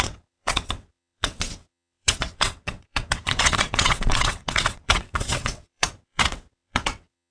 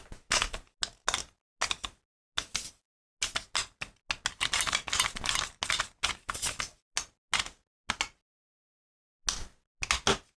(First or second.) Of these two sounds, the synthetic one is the first